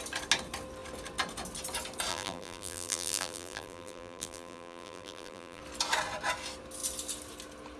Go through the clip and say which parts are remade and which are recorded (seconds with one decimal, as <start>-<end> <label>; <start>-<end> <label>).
0.0-2.1 recorded; 2.1-5.6 remade; 5.6-7.8 recorded